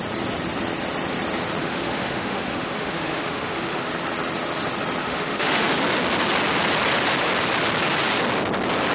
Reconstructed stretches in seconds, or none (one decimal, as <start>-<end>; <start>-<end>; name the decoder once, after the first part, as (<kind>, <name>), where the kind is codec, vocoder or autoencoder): 1.6-3.9 (autoencoder, DAC-VAE); 5.0-5.6